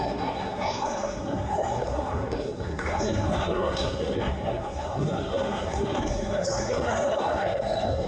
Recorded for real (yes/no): no